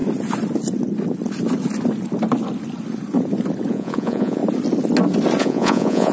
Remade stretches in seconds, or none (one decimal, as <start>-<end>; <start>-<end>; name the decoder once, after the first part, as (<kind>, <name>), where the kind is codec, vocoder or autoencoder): 3.7-4.4 (vocoder, Vocos); 5.4-6.1